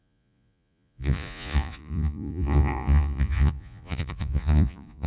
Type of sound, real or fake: fake